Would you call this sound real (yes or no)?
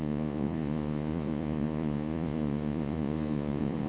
no